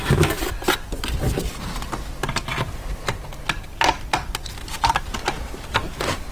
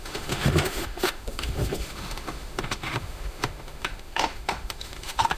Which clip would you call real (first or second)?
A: first